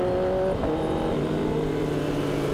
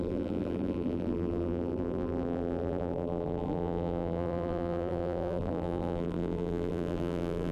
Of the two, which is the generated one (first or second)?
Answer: second